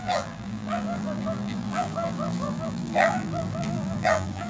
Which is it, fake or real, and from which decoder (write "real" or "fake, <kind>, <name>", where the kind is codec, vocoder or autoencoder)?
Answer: fake, vocoder, BigVGAN v2